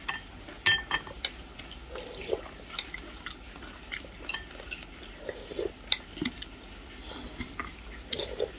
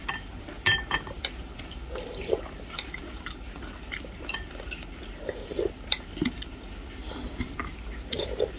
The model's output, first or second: second